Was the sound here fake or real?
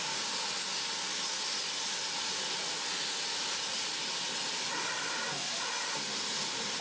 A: real